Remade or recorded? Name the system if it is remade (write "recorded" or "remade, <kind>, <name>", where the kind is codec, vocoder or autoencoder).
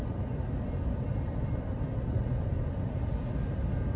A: recorded